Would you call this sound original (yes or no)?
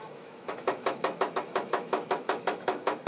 no